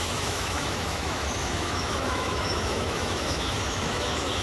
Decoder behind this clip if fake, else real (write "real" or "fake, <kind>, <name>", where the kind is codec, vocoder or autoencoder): fake, autoencoder, DAC-VAE